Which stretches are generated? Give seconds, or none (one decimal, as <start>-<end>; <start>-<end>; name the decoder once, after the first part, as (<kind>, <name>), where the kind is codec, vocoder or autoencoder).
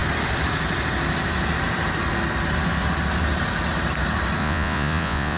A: 4.4-5.4 (vocoder, Vocos)